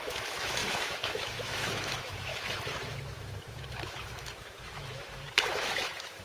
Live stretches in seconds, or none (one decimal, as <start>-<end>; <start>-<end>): none